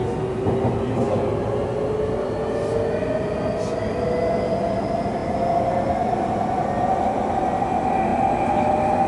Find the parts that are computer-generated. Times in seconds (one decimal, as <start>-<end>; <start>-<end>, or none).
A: none